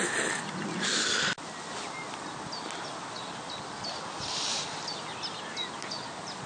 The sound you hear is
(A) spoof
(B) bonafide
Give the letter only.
B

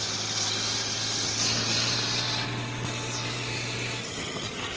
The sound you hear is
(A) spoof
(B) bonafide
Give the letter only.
B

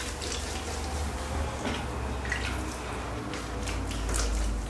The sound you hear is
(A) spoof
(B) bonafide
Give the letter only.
B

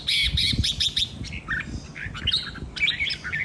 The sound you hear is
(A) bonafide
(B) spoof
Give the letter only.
A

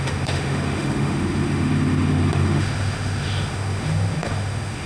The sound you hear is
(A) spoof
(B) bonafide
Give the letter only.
A